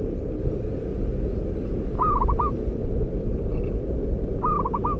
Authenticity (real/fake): real